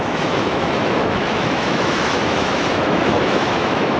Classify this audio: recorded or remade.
remade